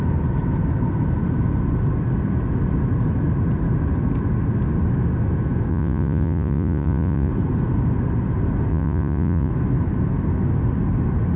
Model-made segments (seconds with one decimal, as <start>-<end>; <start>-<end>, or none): 5.7-7.3; 8.7-9.5